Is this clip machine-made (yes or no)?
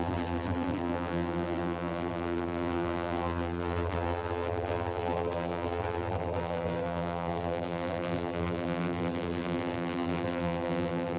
yes